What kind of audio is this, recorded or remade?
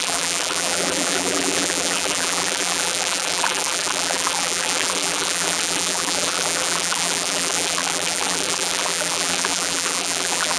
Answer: remade